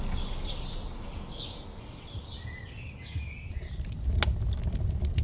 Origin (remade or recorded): recorded